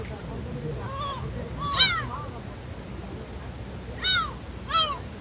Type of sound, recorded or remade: recorded